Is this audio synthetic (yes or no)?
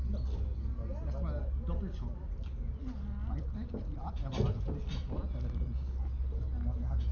no